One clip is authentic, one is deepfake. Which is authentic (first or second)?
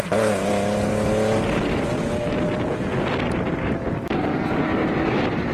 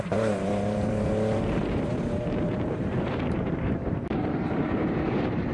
first